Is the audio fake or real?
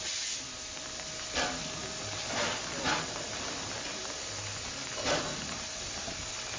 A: real